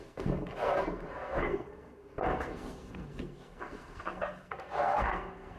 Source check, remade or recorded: remade